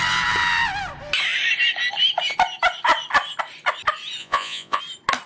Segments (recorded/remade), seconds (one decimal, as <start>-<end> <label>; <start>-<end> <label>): 0.0-4.2 recorded; 4.2-4.8 remade; 4.8-5.3 recorded